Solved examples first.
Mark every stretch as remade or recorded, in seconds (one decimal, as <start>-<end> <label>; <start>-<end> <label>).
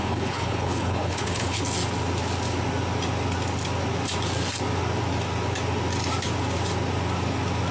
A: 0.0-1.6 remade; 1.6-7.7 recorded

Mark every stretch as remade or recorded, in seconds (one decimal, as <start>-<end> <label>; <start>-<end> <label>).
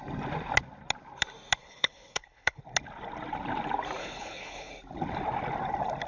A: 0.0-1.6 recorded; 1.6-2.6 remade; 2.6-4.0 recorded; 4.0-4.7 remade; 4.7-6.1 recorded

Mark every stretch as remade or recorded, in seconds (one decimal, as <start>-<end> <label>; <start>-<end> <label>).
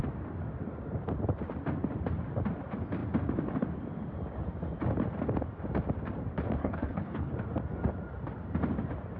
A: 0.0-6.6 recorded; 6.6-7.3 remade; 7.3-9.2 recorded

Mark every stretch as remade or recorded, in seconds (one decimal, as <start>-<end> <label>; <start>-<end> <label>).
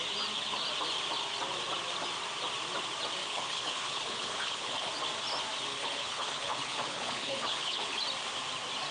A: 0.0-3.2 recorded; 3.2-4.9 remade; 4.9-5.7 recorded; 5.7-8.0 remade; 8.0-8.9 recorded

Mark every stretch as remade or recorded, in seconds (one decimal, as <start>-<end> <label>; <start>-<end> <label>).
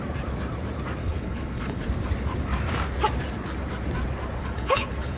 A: 0.0-1.0 recorded; 1.0-1.8 remade; 1.8-4.4 recorded; 4.4-5.2 remade